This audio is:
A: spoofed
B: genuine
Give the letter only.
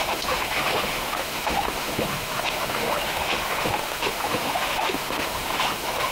A